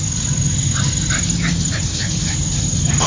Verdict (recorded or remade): recorded